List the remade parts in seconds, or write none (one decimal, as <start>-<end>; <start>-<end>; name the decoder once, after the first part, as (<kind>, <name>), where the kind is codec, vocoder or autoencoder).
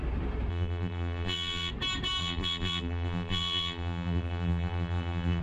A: 0.5-1.7 (vocoder, BigVGAN v2); 2.2-5.4